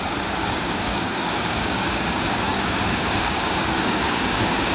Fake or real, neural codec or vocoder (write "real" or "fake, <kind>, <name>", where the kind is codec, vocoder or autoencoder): fake, codec, DAC